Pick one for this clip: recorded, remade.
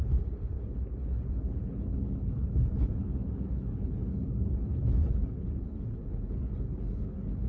remade